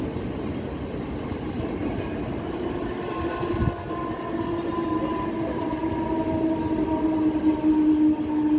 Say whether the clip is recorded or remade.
recorded